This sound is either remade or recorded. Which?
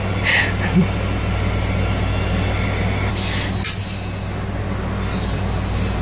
recorded